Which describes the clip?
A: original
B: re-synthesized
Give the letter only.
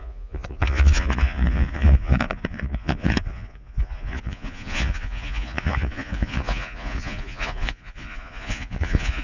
B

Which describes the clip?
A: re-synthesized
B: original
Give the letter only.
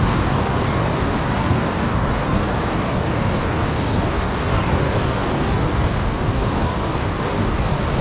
A